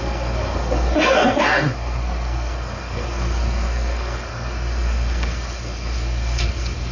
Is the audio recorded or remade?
remade